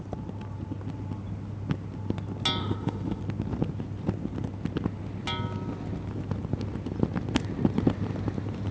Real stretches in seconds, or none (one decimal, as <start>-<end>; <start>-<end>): 0.0-2.6; 3.2-8.7